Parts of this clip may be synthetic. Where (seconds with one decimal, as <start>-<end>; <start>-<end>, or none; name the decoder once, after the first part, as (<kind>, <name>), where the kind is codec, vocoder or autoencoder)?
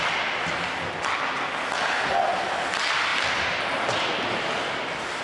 none